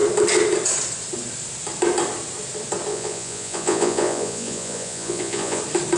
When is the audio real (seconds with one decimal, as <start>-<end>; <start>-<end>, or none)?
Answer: 0.0-2.9; 5.6-6.0